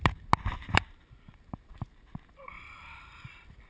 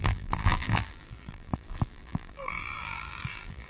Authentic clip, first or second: first